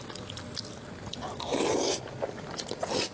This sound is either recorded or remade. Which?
recorded